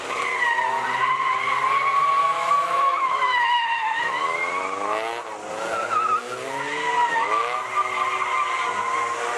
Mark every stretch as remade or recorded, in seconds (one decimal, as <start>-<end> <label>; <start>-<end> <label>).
0.0-2.2 recorded; 2.2-4.5 remade; 4.5-7.0 recorded; 7.0-7.6 remade; 7.6-9.4 recorded